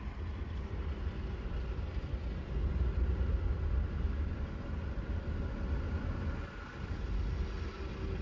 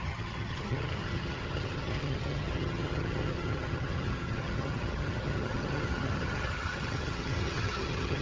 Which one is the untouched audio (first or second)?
first